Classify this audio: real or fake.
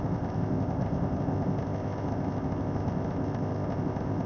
fake